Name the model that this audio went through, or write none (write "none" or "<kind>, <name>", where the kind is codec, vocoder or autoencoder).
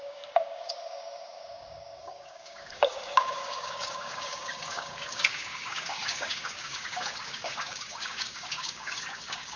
codec, DAC